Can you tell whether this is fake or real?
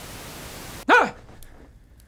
real